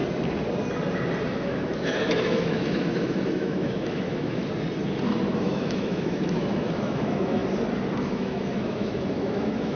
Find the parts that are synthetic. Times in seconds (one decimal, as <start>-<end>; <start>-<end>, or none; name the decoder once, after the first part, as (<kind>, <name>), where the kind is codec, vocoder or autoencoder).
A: 1.3-4.4 (autoencoder, DAC-VAE); 5.3-7.4; 8.1-9.8